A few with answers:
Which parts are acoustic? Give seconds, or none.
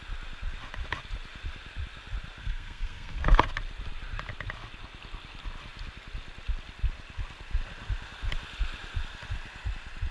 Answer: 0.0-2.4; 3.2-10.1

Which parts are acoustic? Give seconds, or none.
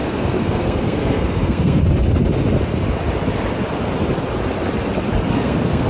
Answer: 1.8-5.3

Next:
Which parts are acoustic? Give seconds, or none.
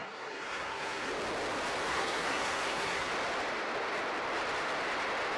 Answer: 1.1-1.9; 3.1-5.4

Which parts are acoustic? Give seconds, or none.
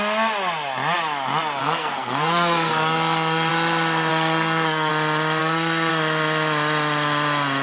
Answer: 0.0-1.6; 3.5-4.1; 4.9-5.4; 5.9-7.6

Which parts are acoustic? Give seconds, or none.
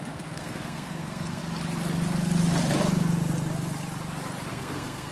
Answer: 1.4-4.5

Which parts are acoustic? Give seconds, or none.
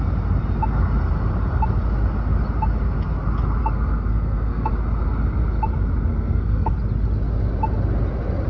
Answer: 0.0-3.6; 4.7-6.1; 6.7-8.5